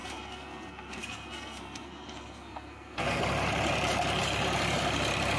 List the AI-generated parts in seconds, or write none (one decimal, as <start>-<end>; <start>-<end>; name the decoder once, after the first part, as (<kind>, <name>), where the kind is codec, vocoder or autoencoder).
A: 0.0-3.2 (codec, SNAC)